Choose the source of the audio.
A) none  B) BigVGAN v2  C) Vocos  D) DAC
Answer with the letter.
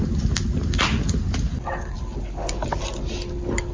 A